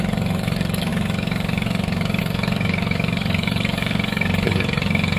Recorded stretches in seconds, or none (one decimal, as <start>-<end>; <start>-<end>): none